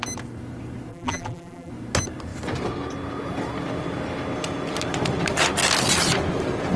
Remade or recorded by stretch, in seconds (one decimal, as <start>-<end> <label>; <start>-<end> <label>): 0.0-0.9 recorded; 0.9-1.7 remade; 1.7-6.8 recorded